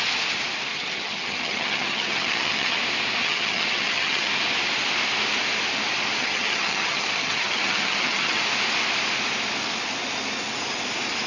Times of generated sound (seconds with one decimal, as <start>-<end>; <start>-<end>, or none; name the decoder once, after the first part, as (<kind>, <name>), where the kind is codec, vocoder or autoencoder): 0.7-2.8 (vocoder, HiFi-GAN); 3.2-4.3; 6.2-8.4

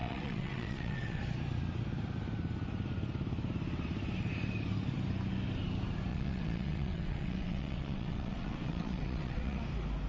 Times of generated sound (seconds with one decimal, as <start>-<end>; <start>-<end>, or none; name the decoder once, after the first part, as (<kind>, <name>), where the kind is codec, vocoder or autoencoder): 0.0-1.2 (vocoder, WaveNeXt); 6.1-9.6

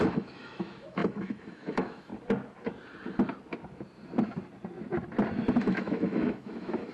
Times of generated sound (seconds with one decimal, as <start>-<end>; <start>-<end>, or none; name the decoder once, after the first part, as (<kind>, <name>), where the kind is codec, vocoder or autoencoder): 0.0-2.1 (autoencoder, DAC-VAE); 5.6-6.9

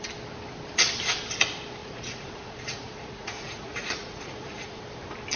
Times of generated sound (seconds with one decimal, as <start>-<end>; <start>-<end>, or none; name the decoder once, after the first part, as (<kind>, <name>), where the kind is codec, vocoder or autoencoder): 1.8-4.8 (vocoder, Vocos)

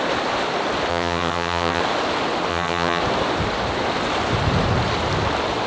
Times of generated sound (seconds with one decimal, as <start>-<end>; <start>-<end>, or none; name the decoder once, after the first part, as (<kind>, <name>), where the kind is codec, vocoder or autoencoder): 0.9-1.8 (vocoder, HiFi-GAN); 2.5-3.0

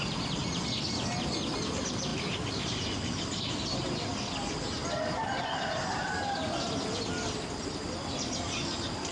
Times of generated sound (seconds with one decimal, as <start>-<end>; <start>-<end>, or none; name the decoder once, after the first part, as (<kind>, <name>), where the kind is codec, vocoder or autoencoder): none